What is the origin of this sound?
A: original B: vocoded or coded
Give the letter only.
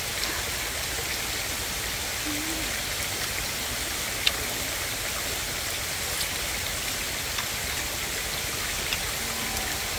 A